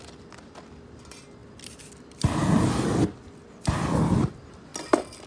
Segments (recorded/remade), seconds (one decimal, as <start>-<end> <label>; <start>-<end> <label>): 0.0-5.3 recorded